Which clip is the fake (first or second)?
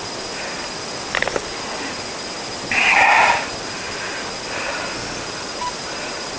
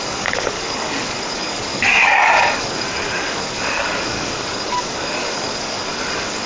second